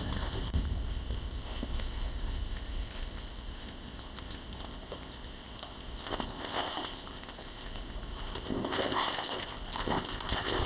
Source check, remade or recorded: remade